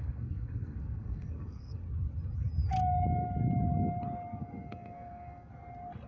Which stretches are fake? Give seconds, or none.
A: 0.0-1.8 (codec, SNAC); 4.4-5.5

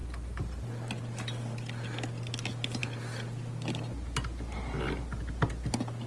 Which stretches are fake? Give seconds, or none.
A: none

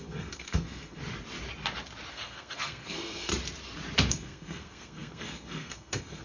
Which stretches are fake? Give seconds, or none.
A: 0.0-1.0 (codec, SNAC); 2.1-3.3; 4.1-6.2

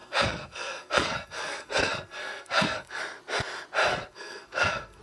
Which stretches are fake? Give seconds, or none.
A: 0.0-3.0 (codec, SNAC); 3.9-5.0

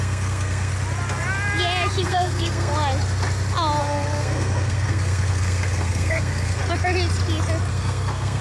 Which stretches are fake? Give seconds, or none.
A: 0.0-0.7 (codec, SNAC); 2.0-2.7; 3.8-6.6; 7.7-8.4

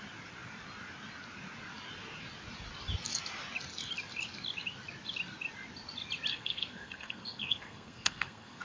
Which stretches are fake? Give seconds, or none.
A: 6.3-8.6 (codec, SNAC)

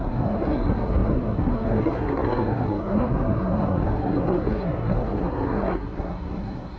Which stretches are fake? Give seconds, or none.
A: 0.0-6.8 (codec, SNAC)